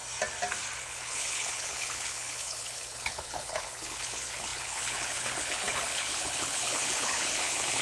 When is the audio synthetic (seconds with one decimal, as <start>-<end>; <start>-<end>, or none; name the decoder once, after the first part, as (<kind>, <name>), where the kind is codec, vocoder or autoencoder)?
0.8-7.8 (codec, HILCodec)